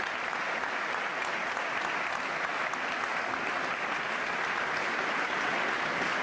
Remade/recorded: recorded